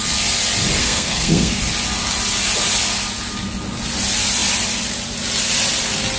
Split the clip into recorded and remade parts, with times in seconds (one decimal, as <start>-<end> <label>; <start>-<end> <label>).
0.0-0.8 recorded; 0.8-1.6 remade; 1.6-6.2 recorded